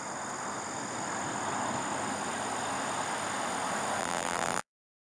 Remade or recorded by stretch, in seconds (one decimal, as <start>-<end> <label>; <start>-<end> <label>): 0.0-4.0 recorded; 4.0-5.1 remade

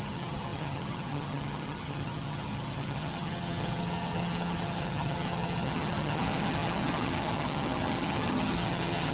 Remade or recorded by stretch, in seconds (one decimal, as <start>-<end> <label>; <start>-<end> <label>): 0.0-9.1 remade

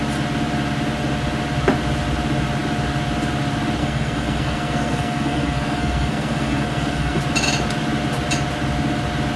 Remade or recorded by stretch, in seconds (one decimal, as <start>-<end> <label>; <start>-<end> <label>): 0.0-3.8 recorded; 3.8-7.2 remade; 7.2-9.4 recorded

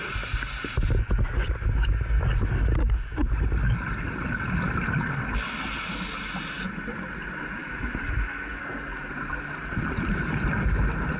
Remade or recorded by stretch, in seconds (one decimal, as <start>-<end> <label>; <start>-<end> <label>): 0.0-7.6 recorded; 7.6-8.6 remade; 8.6-11.2 recorded

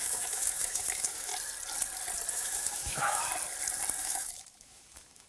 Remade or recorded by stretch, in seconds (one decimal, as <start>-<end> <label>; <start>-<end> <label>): 0.0-1.3 remade; 1.3-2.3 recorded; 2.3-3.3 remade; 3.3-4.0 recorded; 4.0-5.3 remade

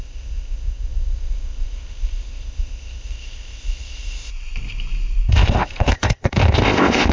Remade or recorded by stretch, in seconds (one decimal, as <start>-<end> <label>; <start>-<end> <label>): 0.0-4.3 remade; 4.3-5.3 recorded; 5.3-7.1 remade